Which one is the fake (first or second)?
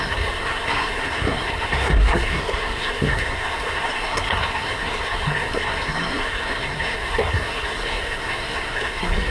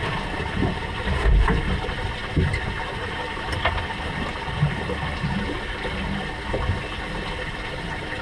first